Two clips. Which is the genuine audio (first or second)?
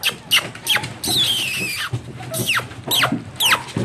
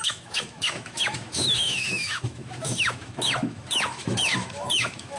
first